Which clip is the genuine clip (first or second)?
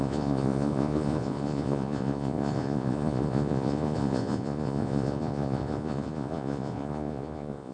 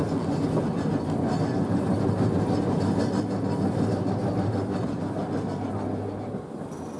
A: second